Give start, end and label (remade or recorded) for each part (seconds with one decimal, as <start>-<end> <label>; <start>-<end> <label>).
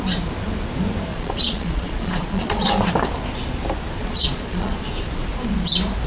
0.0-1.1 recorded; 1.1-2.7 remade; 2.7-4.0 recorded; 4.0-4.9 remade; 4.9-6.1 recorded